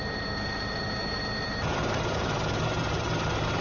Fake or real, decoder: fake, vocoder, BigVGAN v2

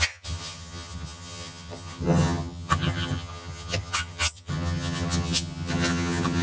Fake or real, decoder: fake, vocoder, HiFi-GAN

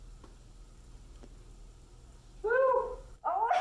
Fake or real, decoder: real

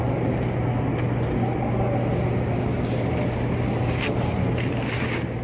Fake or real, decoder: real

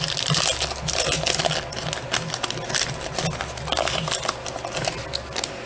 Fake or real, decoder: real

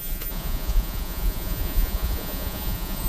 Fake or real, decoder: fake, vocoder, Vocos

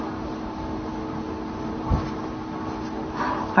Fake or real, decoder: real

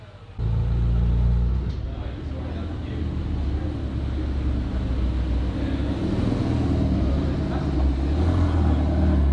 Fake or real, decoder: real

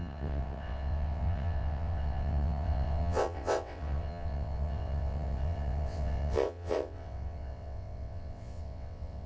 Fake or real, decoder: fake, vocoder, WaveNeXt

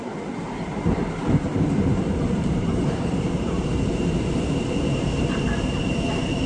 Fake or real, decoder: fake, vocoder, BigVGAN v2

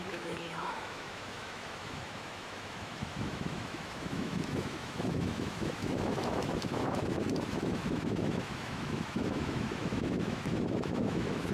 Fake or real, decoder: fake, autoencoder, DAC-VAE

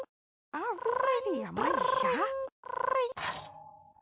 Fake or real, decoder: real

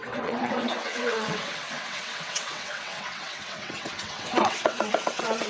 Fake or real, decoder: fake, vocoder, WaveNeXt